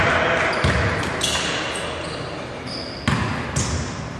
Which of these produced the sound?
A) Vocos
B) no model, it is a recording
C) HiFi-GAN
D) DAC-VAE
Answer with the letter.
B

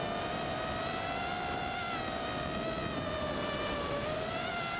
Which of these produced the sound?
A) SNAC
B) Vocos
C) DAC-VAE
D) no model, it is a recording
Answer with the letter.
D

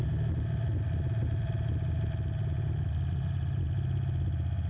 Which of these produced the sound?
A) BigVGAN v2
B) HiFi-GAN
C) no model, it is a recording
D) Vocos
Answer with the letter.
C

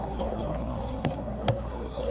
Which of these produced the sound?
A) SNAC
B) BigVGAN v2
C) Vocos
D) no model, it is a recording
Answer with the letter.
A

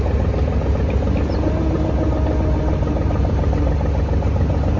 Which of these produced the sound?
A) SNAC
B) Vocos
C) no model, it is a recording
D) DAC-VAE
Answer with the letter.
C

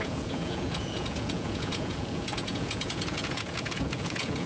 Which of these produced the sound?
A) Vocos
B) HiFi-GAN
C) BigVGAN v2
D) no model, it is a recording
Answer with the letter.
A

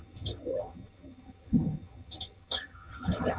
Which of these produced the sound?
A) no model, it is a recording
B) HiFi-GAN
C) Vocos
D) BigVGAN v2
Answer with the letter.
B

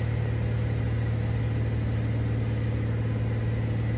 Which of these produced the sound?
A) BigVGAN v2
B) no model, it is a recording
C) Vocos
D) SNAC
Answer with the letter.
B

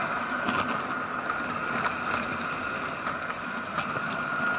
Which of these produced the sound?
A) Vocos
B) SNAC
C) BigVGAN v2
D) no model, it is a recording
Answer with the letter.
D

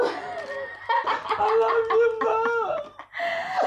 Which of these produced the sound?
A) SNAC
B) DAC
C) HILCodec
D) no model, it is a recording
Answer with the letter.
D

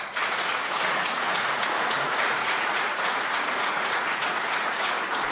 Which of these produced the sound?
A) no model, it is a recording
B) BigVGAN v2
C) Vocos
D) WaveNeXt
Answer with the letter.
C